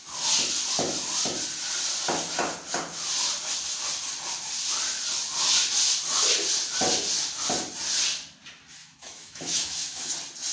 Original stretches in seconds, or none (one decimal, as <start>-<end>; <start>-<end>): 0.0-8.8; 10.1-10.5